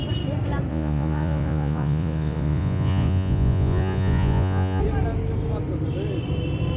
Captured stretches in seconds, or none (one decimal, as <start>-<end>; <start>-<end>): 0.0-0.7; 4.8-6.8